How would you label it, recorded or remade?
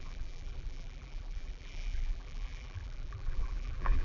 remade